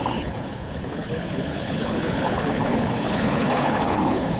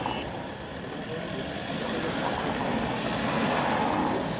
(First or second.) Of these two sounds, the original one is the second